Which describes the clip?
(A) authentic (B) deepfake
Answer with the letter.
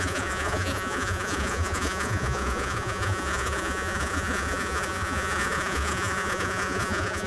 B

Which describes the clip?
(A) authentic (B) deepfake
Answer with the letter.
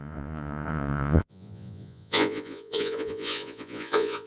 B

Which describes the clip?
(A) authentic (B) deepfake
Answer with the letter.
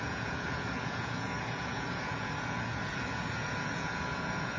B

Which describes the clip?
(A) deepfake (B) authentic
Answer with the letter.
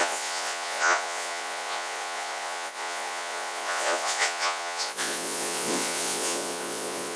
A